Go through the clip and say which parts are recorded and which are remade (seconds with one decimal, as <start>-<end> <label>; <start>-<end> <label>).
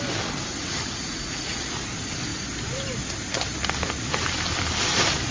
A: 0.0-0.5 recorded; 0.5-1.7 remade; 1.7-5.3 recorded